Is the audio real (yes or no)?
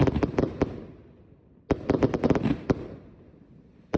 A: yes